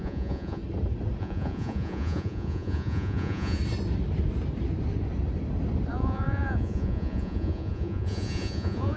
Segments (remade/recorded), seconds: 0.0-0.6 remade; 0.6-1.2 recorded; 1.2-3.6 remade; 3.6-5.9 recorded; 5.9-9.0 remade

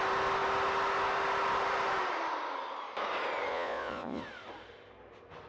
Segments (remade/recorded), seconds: 0.0-3.5 recorded; 3.5-4.2 remade; 4.2-5.5 recorded

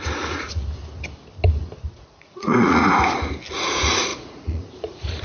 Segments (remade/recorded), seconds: 0.0-0.6 remade; 0.6-1.9 recorded; 1.9-2.8 remade; 2.8-3.5 recorded; 3.5-5.2 remade